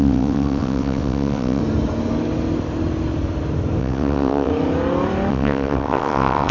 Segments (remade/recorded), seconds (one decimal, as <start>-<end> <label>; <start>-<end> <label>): 0.0-1.6 remade; 1.6-3.8 recorded; 3.8-4.5 remade; 4.5-5.3 recorded; 5.3-6.5 remade